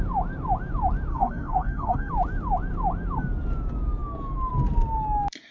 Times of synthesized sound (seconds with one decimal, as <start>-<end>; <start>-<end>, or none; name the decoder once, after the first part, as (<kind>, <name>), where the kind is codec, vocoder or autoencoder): 1.1-2.1 (codec, SNAC)

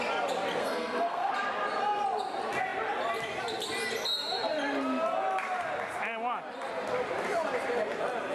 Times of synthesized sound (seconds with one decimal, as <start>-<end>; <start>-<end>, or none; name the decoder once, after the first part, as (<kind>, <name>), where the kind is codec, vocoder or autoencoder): 0.6-1.3 (codec, SNAC)

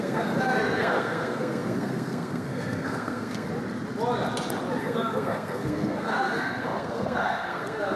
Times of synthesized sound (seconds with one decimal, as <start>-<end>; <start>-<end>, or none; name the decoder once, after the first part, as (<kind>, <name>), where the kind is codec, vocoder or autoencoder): 0.0-3.5 (codec, SNAC); 4.8-8.0

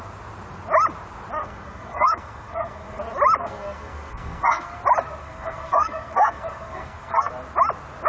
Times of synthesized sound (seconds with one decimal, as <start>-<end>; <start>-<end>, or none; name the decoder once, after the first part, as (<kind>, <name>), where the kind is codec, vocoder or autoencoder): 1.4-3.0 (codec, SNAC); 3.4-4.8; 5.2-7.3

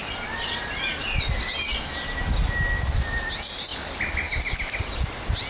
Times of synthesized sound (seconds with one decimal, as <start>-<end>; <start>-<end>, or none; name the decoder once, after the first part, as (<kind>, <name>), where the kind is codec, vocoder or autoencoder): none